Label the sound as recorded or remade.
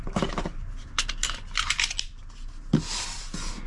recorded